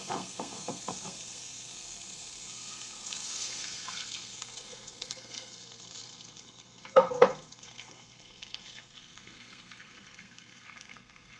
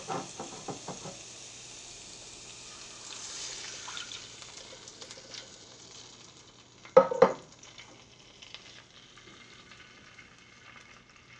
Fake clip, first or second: first